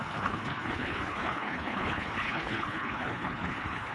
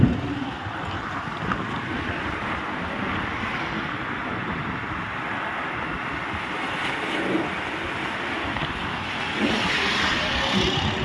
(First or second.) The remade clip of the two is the first